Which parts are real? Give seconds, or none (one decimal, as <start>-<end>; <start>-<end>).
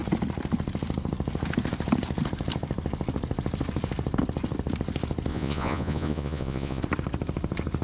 0.0-5.3; 6.8-7.8